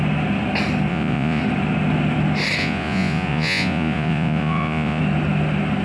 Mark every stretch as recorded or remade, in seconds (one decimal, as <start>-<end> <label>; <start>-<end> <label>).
0.0-0.9 recorded; 0.9-1.4 remade; 1.4-2.6 recorded; 2.6-5.0 remade; 5.0-5.8 recorded